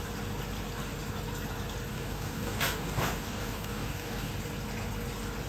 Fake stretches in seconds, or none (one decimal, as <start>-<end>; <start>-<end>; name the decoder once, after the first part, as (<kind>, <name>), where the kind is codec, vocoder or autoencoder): 1.9-4.3 (codec, DAC)